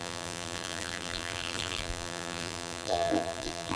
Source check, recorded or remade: remade